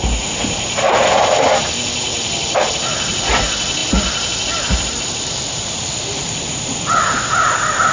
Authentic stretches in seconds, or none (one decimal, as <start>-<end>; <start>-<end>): 0.0-2.1; 2.7-3.8; 7.3-7.9